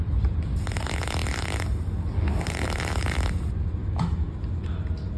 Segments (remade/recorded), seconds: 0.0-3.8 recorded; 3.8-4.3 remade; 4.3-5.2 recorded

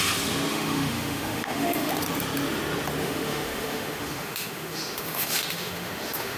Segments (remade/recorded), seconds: 0.0-0.5 recorded; 0.5-1.9 remade; 1.9-3.0 recorded; 3.0-6.4 remade

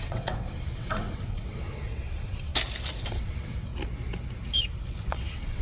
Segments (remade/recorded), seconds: 0.0-2.5 remade; 2.5-3.0 recorded; 3.0-3.7 remade; 3.7-5.1 recorded; 5.1-5.6 remade

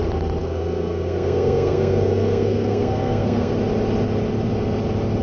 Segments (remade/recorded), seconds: 0.0-0.4 recorded; 0.4-3.5 remade; 3.5-5.2 recorded

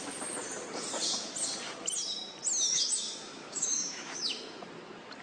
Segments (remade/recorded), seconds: 0.0-2.7 recorded; 2.7-4.6 remade; 4.6-5.2 recorded

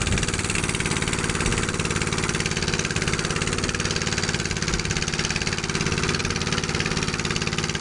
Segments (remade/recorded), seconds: 0.0-7.8 recorded

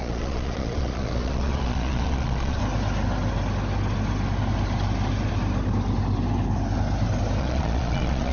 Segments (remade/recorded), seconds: 0.0-2.6 remade; 2.6-7.4 recorded; 7.4-8.3 remade